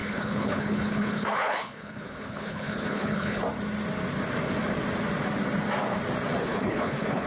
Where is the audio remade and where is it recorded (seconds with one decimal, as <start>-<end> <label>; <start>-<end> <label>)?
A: 0.0-3.4 remade; 3.4-6.4 recorded; 6.4-7.3 remade